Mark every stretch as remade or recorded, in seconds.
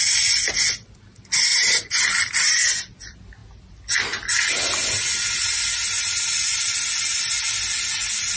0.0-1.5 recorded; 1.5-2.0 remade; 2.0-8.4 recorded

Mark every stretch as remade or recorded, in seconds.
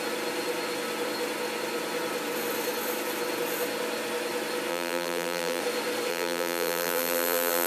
0.0-4.7 recorded; 4.7-5.6 remade; 5.6-6.1 recorded; 6.1-7.7 remade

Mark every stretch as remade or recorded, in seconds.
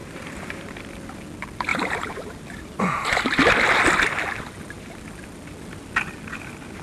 0.0-0.9 remade; 0.9-1.7 recorded; 1.7-2.8 remade; 2.8-6.8 recorded